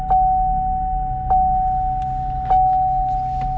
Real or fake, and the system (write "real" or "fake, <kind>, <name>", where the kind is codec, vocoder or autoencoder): real